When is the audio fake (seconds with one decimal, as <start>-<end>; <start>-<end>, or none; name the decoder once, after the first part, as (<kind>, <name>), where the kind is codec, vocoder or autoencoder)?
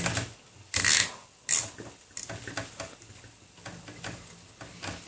none